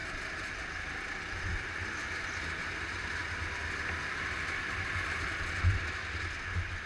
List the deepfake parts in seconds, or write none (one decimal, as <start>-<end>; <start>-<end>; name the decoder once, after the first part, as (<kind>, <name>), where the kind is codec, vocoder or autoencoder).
none